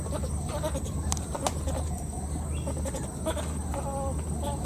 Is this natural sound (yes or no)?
yes